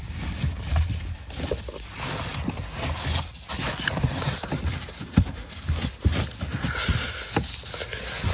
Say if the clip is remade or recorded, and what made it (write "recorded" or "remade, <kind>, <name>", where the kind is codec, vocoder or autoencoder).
recorded